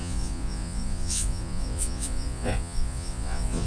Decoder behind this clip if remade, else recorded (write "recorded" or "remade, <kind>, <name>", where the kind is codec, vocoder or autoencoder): remade, vocoder, Vocos